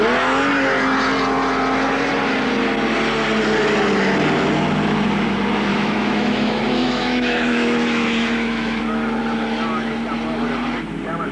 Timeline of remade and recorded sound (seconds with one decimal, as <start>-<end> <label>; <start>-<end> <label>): 0.0-5.7 recorded; 5.7-8.8 remade; 8.8-11.3 recorded